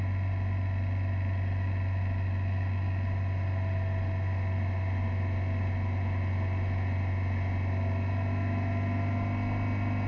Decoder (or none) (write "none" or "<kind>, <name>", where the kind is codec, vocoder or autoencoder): none